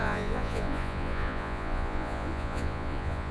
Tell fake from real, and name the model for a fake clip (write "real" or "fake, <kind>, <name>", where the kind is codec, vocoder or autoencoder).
fake, vocoder, Vocos